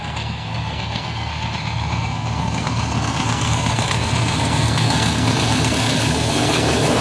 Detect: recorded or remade remade